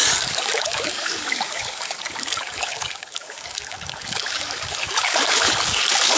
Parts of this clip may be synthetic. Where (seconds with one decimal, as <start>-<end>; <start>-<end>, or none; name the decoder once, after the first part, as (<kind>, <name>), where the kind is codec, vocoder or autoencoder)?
0.0-6.2 (codec, DAC)